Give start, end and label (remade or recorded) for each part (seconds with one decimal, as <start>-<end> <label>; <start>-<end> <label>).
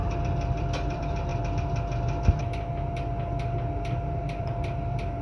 0.0-1.3 remade; 1.3-4.4 recorded; 4.4-5.2 remade